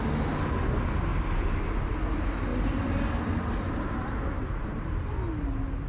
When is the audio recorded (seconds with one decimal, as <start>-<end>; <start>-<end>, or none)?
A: 0.0-2.5; 5.0-5.9